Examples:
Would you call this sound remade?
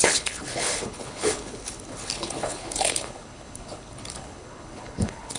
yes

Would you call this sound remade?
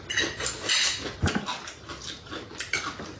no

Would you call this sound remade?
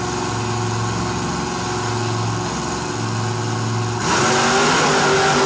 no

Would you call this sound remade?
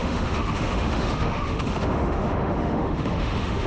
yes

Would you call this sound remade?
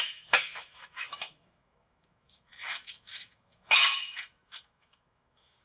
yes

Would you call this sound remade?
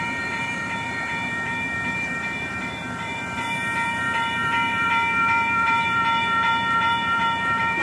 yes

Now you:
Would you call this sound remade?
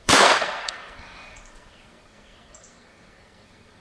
yes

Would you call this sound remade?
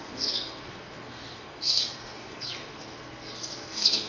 yes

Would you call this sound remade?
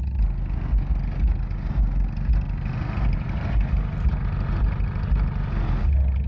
no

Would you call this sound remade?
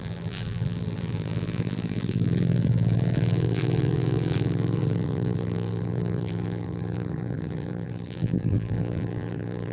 yes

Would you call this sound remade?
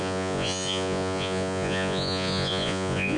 yes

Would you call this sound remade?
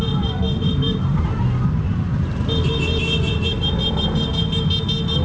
no